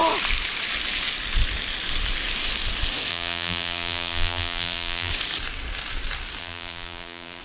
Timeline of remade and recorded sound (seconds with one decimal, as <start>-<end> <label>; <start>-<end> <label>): 0.0-3.1 recorded; 3.1-5.1 remade; 5.1-6.4 recorded; 6.4-7.4 remade